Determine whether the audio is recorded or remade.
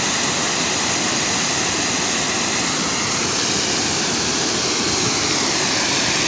recorded